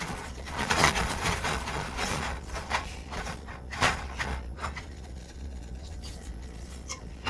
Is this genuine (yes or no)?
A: no